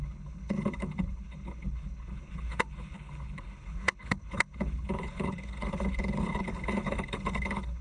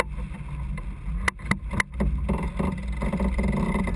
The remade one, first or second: first